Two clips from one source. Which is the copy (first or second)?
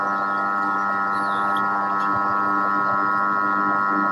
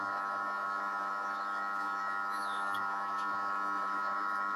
second